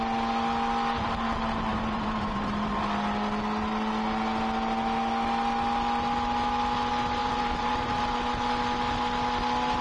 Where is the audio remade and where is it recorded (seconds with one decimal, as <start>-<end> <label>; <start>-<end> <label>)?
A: 0.0-1.7 recorded; 1.7-2.7 remade; 2.7-7.2 recorded; 7.2-8.0 remade; 8.0-9.8 recorded

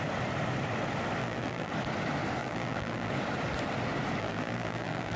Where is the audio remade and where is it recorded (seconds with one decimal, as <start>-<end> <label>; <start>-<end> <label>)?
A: 0.0-1.2 recorded; 1.2-1.7 remade; 1.7-2.4 recorded; 2.4-3.1 remade; 3.1-4.2 recorded; 4.2-5.2 remade

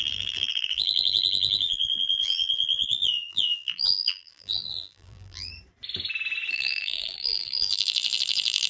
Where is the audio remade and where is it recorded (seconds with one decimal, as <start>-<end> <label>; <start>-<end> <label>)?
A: 0.0-5.5 remade; 5.5-6.5 recorded; 6.5-8.7 remade

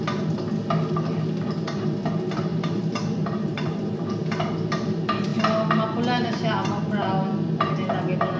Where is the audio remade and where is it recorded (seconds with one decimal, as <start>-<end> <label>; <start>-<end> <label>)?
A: 0.0-2.5 recorded; 2.5-4.2 remade; 4.2-8.4 recorded

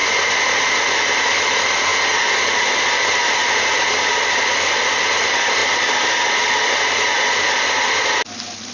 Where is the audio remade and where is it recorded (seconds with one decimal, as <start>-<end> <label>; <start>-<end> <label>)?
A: 0.0-1.9 remade; 1.9-4.1 recorded; 4.1-8.7 remade

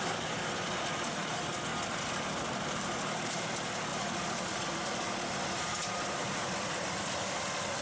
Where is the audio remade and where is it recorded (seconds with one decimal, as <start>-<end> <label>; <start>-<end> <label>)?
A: 0.0-1.7 remade; 1.7-3.3 recorded; 3.3-7.8 remade

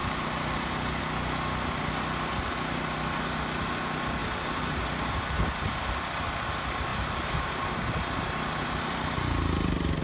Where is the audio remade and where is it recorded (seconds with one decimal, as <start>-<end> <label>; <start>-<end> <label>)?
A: 0.0-1.0 remade; 1.0-6.9 recorded; 6.9-9.1 remade; 9.1-10.0 recorded

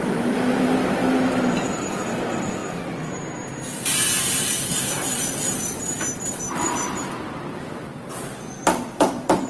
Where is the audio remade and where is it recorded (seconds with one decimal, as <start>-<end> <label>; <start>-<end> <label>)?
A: 0.0-2.6 remade; 2.6-4.2 recorded; 4.2-9.5 remade